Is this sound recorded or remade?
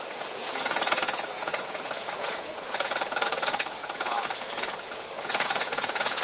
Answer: remade